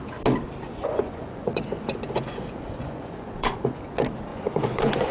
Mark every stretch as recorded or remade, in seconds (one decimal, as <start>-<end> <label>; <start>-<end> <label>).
0.0-0.7 recorded; 0.7-3.8 remade; 3.8-4.3 recorded; 4.3-5.1 remade